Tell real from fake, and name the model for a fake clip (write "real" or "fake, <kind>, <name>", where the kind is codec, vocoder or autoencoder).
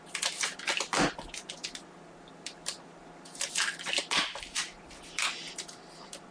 real